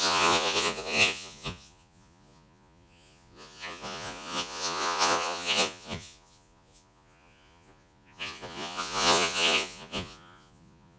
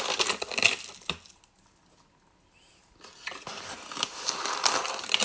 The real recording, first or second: second